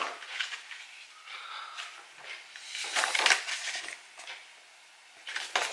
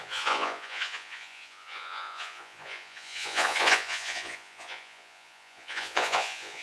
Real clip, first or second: first